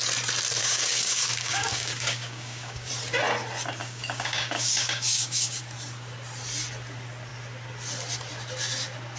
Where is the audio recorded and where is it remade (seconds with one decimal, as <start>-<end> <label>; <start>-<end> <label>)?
0.0-0.6 recorded; 0.6-2.9 remade; 2.9-3.8 recorded; 3.8-5.6 remade; 5.6-9.2 recorded